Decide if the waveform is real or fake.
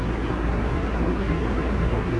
fake